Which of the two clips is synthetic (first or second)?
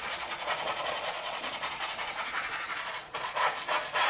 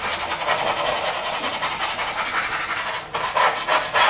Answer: first